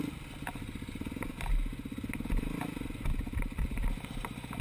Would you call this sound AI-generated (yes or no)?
no